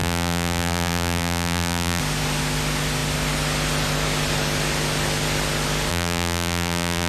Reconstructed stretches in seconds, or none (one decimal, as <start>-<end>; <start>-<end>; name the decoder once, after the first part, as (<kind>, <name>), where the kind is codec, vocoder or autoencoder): 0.0-2.0 (vocoder, BigVGAN v2); 5.9-7.1